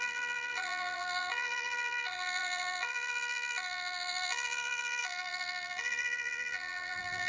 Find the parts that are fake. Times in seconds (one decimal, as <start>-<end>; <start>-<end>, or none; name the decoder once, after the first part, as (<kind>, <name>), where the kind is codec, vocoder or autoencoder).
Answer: 0.0-7.3 (vocoder, BigVGAN v2)